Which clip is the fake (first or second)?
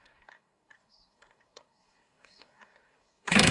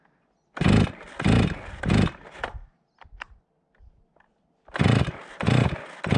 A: first